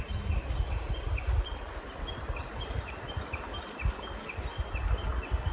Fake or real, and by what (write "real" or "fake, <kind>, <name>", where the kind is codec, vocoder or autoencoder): real